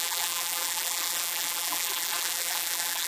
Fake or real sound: fake